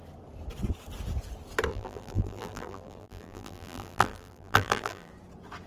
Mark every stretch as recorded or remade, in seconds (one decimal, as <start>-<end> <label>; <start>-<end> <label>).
0.0-1.7 recorded; 1.7-5.1 remade; 5.1-5.7 recorded